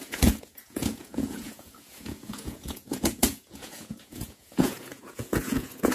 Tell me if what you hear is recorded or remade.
remade